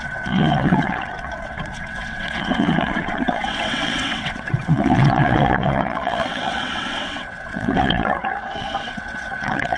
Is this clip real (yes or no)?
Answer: no